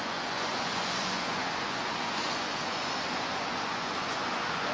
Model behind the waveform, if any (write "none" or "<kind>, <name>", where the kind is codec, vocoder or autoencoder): vocoder, Vocos